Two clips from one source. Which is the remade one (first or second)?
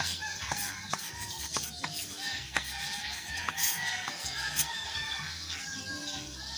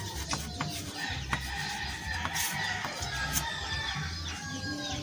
first